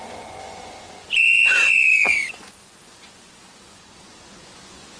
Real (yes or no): no